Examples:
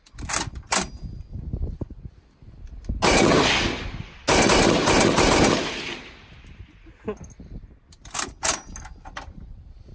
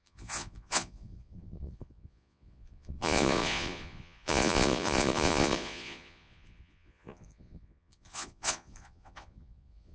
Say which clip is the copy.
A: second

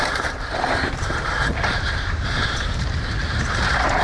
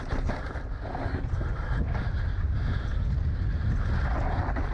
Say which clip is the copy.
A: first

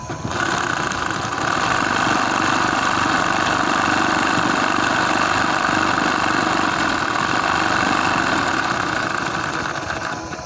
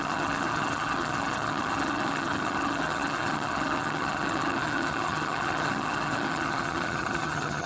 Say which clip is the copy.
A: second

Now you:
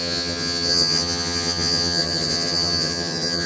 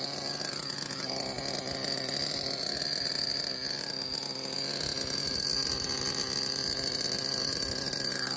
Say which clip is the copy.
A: first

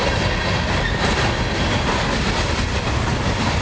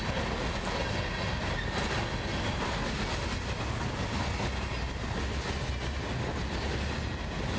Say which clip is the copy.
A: first